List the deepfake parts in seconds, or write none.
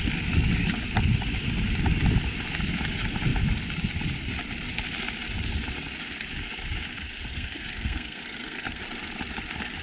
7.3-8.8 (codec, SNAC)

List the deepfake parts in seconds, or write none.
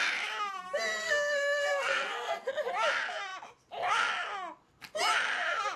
1.0-2.5 (codec, SNAC)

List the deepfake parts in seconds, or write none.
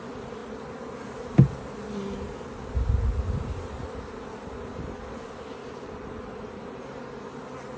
none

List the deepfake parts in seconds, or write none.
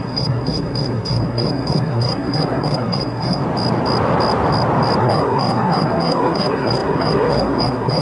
0.0-3.4 (codec, SNAC); 5.0-8.0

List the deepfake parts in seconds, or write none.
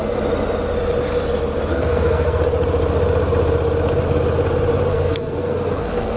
1.7-2.4 (codec, SNAC); 4.9-6.2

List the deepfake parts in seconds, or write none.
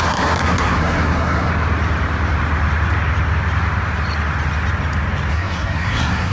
0.0-1.5 (codec, SNAC); 5.3-6.3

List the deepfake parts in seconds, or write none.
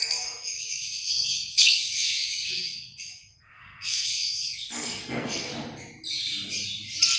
0.0-5.5 (codec, SNAC)